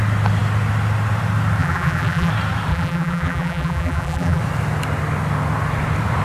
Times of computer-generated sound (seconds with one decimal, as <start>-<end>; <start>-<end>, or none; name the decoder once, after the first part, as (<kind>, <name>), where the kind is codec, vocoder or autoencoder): 1.6-2.3 (vocoder, BigVGAN v2); 2.7-4.4